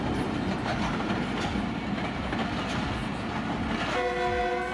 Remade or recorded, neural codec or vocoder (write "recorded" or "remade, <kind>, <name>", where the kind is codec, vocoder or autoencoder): recorded